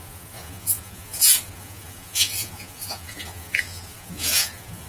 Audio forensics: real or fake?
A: fake